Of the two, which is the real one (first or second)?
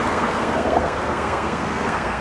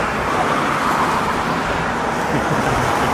second